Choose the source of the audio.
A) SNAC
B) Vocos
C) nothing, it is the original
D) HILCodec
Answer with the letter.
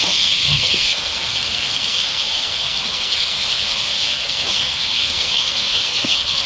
A